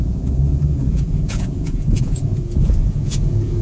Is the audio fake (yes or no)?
yes